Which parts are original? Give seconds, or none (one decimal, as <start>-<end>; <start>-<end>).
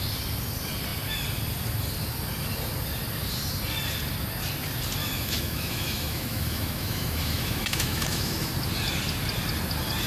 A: 0.0-5.0; 8.5-10.1